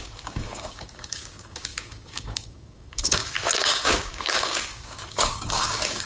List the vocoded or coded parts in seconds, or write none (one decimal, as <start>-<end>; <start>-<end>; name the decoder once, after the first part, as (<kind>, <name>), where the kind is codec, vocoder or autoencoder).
0.0-6.1 (codec, DAC)